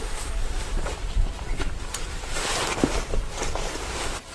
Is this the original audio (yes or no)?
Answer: no